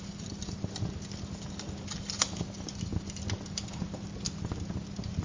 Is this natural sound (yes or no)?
yes